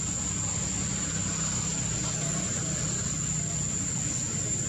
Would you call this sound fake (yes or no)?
no